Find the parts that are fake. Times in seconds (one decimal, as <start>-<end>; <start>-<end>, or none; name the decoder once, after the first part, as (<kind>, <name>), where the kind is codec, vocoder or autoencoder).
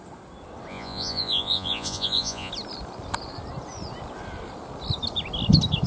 0.7-2.5 (vocoder, Vocos)